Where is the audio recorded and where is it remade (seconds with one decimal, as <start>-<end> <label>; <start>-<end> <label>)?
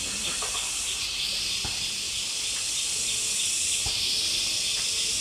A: 0.0-5.2 recorded